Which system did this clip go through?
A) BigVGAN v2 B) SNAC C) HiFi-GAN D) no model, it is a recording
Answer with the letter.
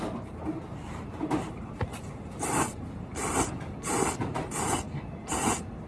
A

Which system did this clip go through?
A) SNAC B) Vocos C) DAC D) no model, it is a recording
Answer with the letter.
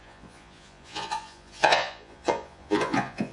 B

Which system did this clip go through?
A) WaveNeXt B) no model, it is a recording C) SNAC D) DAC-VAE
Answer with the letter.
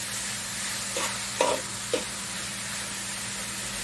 B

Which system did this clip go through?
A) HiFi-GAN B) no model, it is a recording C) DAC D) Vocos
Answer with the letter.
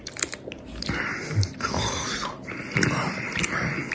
B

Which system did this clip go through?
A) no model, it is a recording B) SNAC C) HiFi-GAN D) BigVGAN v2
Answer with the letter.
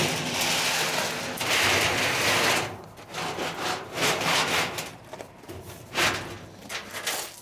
A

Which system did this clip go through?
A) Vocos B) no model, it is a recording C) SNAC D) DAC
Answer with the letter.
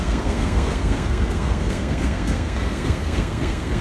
C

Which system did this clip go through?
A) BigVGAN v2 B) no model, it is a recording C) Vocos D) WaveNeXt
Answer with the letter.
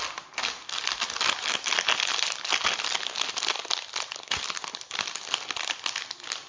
B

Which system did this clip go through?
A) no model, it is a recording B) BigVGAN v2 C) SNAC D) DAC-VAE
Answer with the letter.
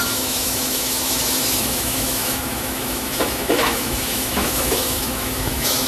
D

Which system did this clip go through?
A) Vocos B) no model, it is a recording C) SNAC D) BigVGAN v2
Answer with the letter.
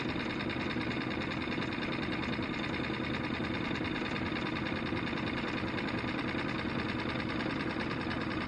B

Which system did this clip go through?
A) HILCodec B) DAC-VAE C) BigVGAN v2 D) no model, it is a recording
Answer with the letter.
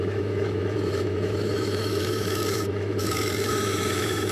B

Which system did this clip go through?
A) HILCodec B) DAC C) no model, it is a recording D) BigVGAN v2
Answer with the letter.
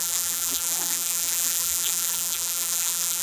D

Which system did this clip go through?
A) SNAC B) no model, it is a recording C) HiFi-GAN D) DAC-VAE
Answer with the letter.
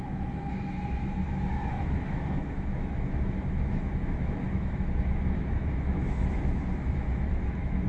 D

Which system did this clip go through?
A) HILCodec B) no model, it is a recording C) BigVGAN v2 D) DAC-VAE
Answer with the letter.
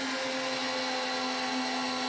B